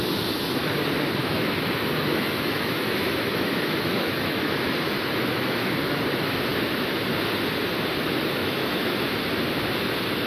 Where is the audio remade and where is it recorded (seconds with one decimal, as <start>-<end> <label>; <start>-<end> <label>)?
0.0-1.2 recorded; 1.2-5.7 remade; 5.7-8.4 recorded; 8.4-9.0 remade; 9.0-10.3 recorded